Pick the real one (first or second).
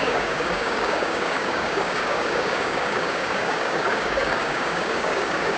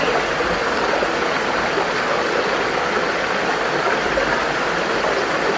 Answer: second